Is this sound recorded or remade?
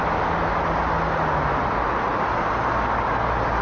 recorded